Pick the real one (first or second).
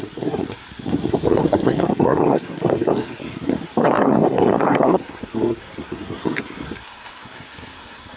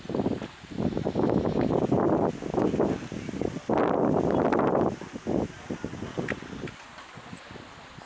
second